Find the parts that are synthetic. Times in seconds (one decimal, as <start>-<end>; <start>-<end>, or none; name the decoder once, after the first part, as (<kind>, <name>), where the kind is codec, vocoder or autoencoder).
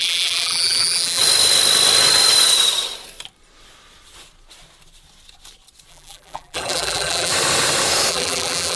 0.0-1.2 (vocoder, BigVGAN v2); 5.9-7.3; 8.1-8.8